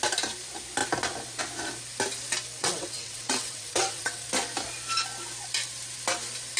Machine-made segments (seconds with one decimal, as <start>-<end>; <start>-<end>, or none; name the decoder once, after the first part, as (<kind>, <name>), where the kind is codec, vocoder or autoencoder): 2.6-4.2 (vocoder, WaveNeXt)